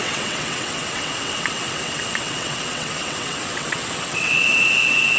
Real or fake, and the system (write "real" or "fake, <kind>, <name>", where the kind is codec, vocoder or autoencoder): fake, vocoder, WaveNeXt